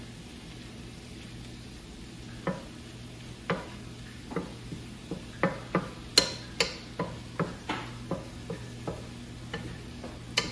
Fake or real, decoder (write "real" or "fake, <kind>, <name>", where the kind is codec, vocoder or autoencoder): real